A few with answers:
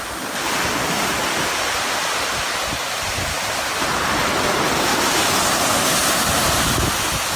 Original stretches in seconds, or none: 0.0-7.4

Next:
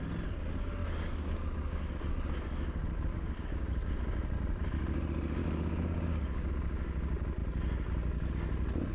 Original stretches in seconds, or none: 0.0-0.8; 1.8-3.1; 3.9-5.4; 6.5-8.9